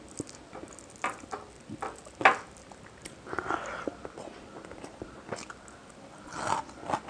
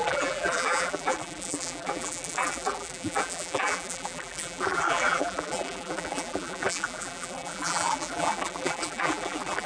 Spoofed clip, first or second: second